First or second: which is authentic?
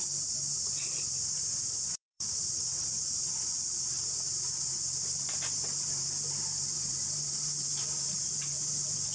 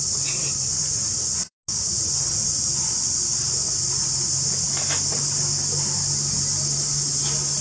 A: second